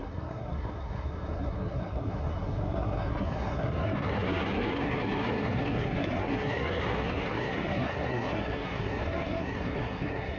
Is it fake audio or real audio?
fake